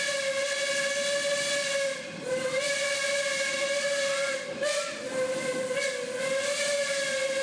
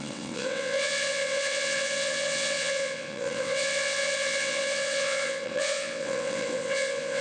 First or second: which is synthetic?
second